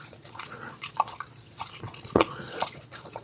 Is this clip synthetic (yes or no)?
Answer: yes